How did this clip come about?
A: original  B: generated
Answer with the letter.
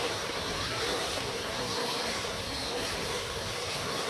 B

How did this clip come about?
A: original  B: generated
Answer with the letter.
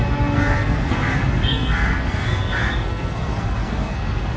B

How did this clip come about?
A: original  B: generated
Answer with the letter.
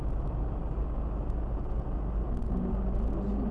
A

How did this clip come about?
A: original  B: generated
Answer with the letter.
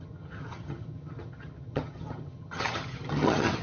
B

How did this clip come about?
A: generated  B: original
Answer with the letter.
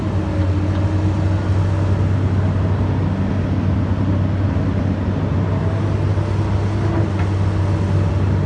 B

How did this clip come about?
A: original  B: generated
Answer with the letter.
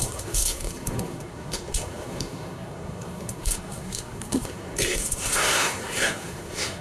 B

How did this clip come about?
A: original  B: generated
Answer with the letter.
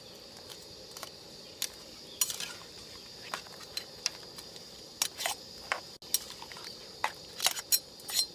A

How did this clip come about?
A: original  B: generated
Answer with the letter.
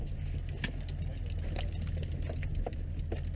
A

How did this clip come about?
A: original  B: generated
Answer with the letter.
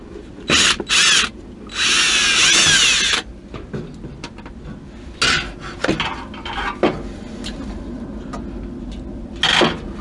A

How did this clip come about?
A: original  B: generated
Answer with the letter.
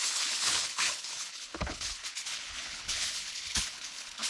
B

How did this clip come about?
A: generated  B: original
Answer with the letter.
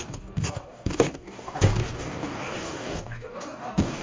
A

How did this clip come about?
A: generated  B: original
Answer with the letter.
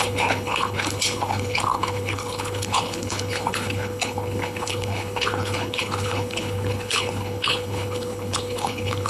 A